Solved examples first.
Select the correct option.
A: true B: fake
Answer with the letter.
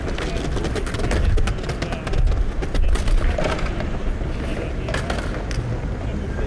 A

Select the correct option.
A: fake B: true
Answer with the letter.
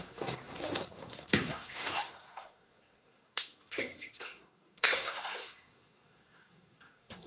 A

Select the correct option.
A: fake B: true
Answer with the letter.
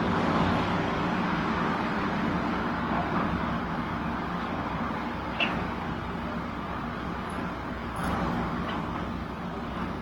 A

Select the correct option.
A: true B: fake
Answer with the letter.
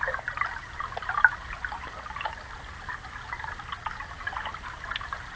A